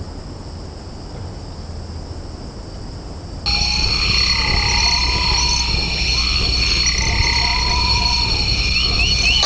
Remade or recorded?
recorded